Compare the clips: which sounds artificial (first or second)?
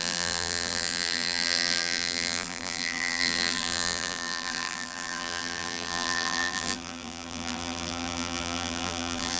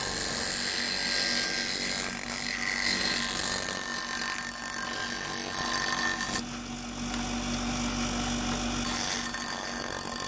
first